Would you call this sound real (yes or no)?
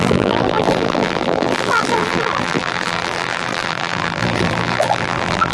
no